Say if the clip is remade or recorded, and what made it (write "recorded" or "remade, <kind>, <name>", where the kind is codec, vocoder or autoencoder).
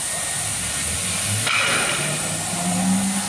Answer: recorded